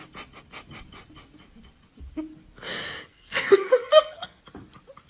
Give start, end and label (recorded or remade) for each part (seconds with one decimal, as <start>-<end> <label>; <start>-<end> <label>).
0.0-3.1 recorded; 3.1-4.4 remade; 4.4-5.1 recorded